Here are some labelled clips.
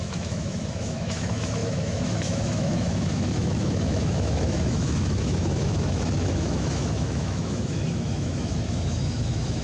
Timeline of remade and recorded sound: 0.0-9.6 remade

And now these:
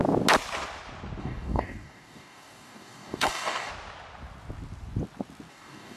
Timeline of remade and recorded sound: 0.0-1.2 recorded; 1.2-3.7 remade; 3.7-5.5 recorded; 5.5-6.0 remade

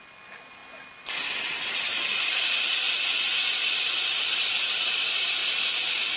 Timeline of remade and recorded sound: 0.0-6.2 recorded

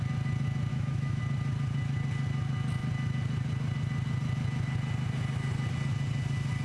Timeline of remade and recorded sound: 0.0-0.7 recorded; 0.7-1.2 remade; 1.2-6.6 recorded

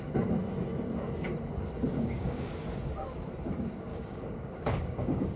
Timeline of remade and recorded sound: 0.0-1.9 recorded; 1.9-2.6 remade; 2.6-3.9 recorded; 3.9-5.4 remade

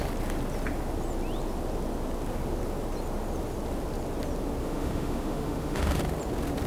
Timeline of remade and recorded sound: 0.0-4.6 recorded; 4.6-6.0 remade; 6.0-6.7 recorded

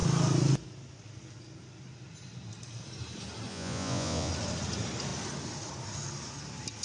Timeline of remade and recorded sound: 0.0-3.5 recorded; 3.5-4.3 remade; 4.3-6.8 recorded